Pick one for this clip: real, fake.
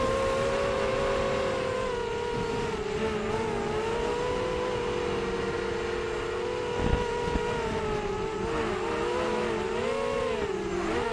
real